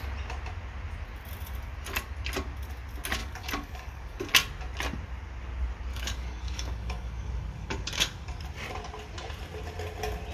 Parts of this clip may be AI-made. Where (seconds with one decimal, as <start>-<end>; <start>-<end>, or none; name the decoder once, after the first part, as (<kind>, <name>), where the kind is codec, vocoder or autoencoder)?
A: 3.2-4.3 (codec, DAC); 5.9-8.4